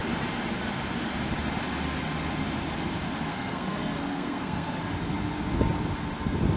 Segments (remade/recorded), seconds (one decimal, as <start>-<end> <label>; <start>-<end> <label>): 0.0-3.3 recorded; 3.3-4.8 remade; 4.8-6.6 recorded